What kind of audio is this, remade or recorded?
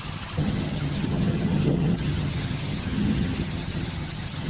remade